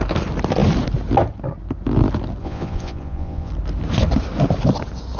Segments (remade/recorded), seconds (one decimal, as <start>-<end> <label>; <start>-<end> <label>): 0.0-2.4 recorded; 2.4-3.5 remade; 3.5-5.2 recorded